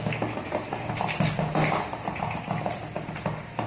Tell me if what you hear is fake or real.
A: real